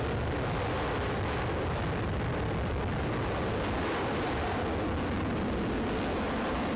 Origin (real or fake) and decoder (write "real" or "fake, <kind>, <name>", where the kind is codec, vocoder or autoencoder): real